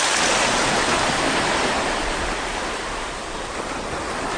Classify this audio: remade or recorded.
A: recorded